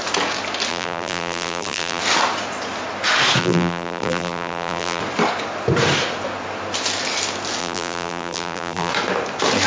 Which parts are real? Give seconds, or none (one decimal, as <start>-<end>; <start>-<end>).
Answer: 0.0-0.7; 2.0-3.4; 5.0-7.6; 8.9-9.7